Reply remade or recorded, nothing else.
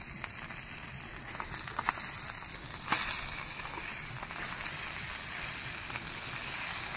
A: recorded